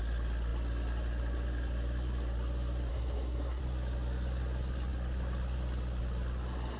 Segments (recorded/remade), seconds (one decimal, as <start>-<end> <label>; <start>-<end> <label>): 0.0-2.9 recorded; 2.9-3.6 remade; 3.6-6.8 recorded